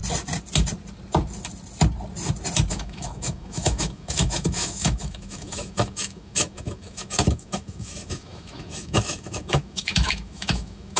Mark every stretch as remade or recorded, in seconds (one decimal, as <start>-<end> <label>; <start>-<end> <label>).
0.0-2.7 recorded; 2.7-11.0 remade